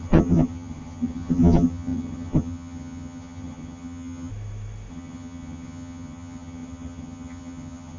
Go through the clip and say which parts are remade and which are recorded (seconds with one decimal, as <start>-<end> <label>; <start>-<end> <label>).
0.0-4.3 remade; 4.3-4.9 recorded; 4.9-8.0 remade